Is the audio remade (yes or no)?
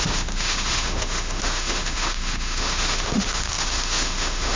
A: yes